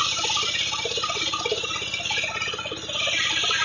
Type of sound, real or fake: real